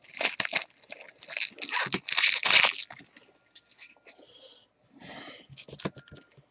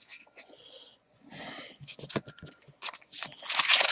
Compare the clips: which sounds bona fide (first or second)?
first